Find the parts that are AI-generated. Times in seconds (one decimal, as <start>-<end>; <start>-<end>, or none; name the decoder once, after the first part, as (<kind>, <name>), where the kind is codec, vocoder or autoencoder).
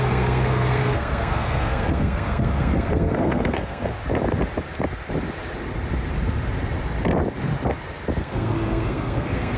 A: 0.0-3.9 (codec, SNAC); 8.2-9.6